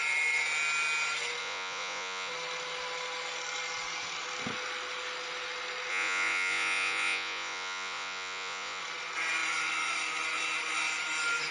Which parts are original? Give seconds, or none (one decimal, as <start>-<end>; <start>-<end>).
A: 0.0-1.4; 2.3-5.9; 8.8-11.5